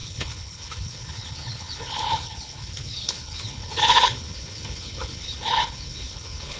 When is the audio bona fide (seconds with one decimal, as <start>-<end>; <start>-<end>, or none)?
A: none